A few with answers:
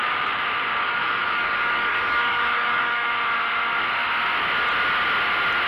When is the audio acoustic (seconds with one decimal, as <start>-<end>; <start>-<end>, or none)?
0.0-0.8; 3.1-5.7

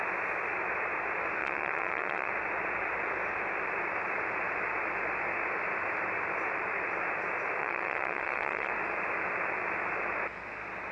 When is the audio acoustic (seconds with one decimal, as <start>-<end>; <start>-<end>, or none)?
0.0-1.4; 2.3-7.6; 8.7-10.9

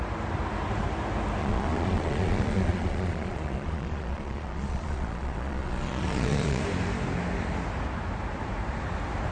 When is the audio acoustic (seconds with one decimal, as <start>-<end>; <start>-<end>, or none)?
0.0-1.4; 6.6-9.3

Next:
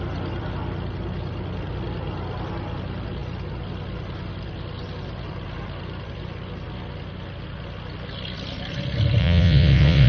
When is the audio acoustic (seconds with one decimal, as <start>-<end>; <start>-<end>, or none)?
0.0-9.2

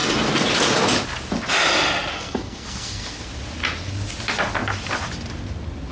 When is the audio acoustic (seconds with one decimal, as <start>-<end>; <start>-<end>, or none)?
0.0-2.1; 3.3-5.9

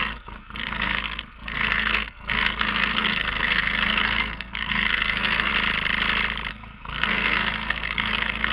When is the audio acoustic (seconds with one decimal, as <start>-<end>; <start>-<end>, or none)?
5.5-6.5